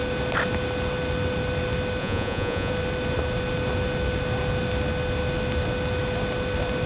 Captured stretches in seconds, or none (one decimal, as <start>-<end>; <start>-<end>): 0.0-2.0; 2.7-6.9